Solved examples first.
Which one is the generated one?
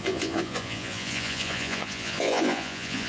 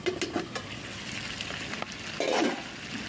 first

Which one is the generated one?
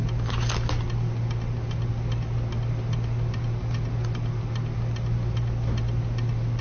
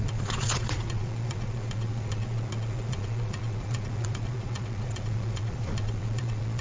second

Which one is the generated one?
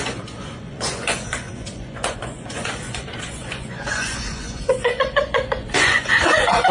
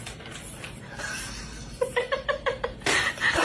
first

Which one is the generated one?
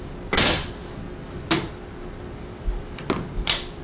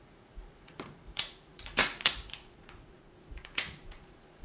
second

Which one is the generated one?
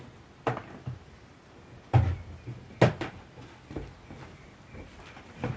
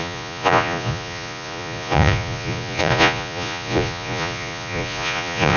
second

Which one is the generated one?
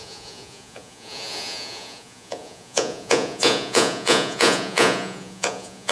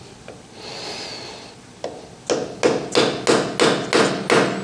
first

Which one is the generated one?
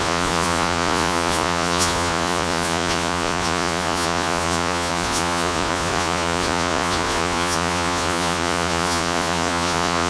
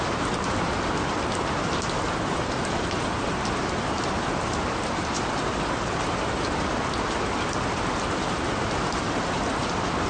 first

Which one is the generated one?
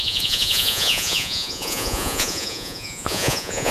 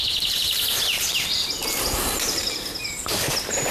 first